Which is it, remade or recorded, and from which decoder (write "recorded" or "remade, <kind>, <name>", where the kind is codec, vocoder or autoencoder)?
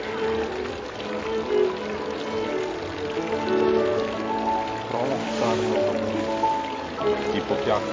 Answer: recorded